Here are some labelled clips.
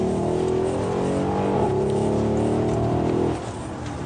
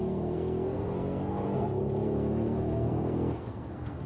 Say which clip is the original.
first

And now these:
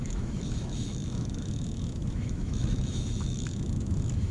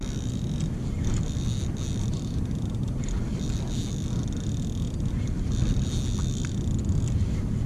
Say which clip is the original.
second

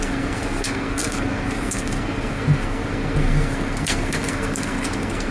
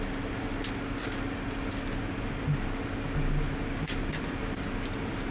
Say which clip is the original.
second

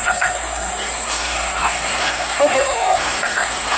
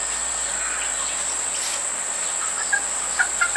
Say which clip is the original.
second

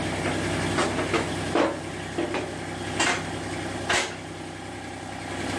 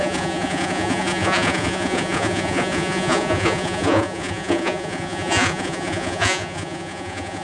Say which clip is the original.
first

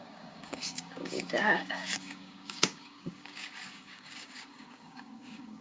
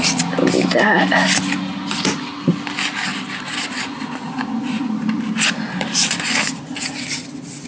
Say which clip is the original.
second